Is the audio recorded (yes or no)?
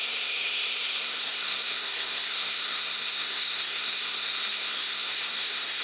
no